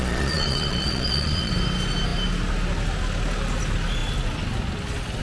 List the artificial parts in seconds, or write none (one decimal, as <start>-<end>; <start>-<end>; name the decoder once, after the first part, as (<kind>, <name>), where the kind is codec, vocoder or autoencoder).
0.0-1.5 (vocoder, Vocos)